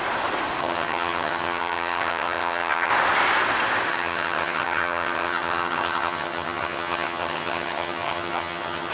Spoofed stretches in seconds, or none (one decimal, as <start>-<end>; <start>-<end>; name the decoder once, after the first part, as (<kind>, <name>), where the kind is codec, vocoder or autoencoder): 0.6-2.9 (vocoder, HiFi-GAN); 3.9-8.9